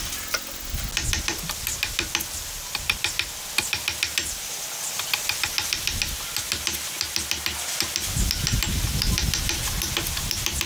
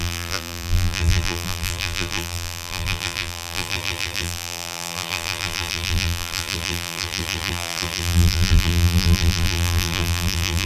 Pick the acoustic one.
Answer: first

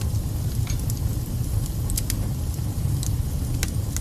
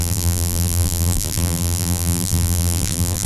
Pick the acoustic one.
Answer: first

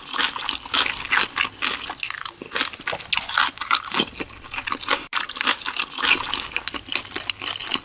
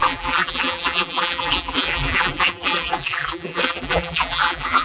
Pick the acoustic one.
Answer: first